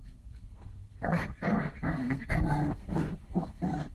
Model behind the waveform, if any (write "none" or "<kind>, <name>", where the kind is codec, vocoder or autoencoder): codec, SNAC